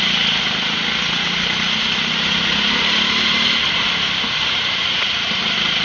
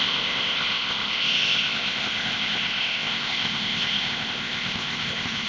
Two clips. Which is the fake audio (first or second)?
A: second